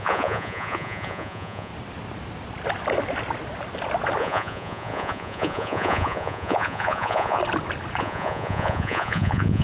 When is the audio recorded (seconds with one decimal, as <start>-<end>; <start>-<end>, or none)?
1.7-4.2; 7.4-8.0